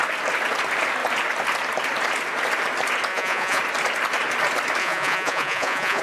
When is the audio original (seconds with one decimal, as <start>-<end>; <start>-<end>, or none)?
0.0-3.1; 3.6-4.8